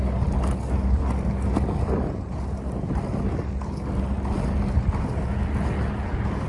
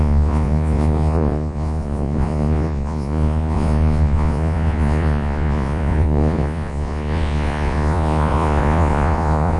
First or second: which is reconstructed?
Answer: second